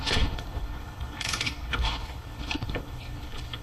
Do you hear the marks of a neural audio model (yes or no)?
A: yes